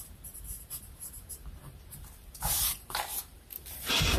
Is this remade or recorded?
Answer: remade